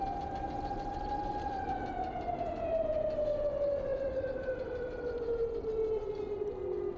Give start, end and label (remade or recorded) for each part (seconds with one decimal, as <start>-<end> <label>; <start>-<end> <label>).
0.0-3.9 recorded; 3.9-5.6 remade; 5.6-7.0 recorded